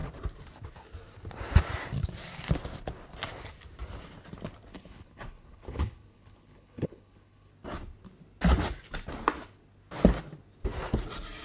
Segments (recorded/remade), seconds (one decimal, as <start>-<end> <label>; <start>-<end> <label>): 0.0-4.7 recorded; 4.7-7.5 remade; 7.5-11.4 recorded